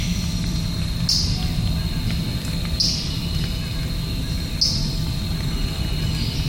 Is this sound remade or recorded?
recorded